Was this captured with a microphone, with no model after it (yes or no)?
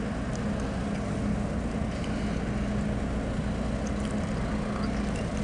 yes